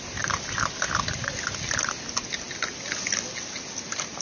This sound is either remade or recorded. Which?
recorded